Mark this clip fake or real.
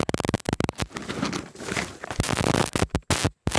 real